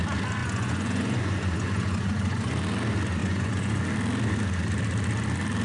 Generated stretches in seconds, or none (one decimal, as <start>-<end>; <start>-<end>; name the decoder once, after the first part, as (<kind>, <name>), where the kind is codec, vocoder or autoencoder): 0.4-2.5 (vocoder, Vocos); 3.2-3.8